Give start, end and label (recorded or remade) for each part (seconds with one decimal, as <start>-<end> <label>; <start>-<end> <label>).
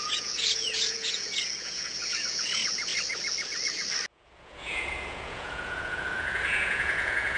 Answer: 0.0-2.9 remade; 2.9-4.1 recorded; 4.1-7.4 remade